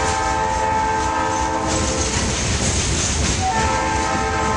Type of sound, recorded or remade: recorded